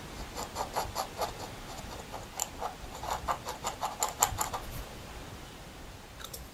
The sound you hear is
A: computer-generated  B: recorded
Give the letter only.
B